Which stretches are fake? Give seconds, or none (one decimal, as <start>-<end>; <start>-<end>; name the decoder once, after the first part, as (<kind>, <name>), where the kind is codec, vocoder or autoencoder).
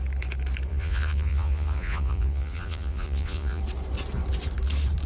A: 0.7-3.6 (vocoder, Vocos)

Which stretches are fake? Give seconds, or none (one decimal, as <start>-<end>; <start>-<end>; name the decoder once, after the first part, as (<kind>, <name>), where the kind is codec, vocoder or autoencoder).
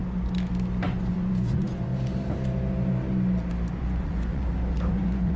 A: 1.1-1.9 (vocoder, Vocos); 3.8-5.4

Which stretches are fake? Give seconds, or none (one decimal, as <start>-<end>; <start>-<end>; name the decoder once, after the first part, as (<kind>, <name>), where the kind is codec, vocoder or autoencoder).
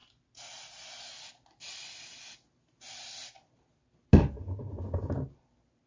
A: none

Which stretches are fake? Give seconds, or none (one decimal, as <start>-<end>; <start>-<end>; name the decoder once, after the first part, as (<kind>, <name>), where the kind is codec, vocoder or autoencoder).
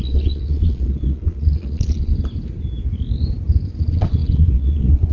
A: 0.0-2.1 (vocoder, Vocos); 3.8-5.1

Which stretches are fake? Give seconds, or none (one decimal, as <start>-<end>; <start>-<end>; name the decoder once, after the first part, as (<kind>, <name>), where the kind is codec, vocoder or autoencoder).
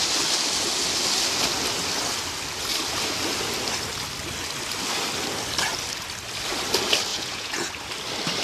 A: 7.1-7.7 (vocoder, Vocos)